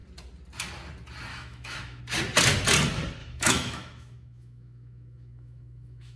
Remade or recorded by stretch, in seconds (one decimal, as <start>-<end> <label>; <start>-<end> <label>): 0.0-1.3 recorded; 1.3-2.0 remade; 2.0-3.2 recorded; 3.2-6.2 remade